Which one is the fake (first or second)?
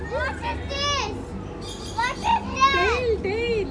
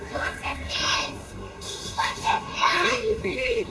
second